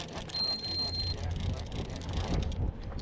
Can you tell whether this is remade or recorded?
recorded